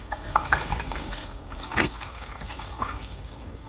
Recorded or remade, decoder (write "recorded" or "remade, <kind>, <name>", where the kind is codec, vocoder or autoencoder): remade, codec, SNAC